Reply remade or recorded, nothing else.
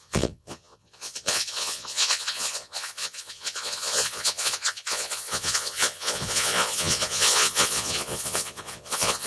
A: remade